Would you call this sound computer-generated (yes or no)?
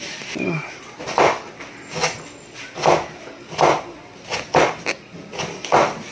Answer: no